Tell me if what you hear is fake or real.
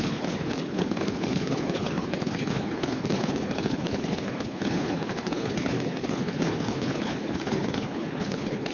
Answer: fake